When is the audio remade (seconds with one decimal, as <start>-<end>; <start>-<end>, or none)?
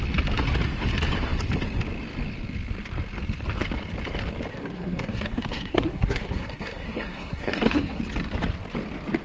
4.5-8.0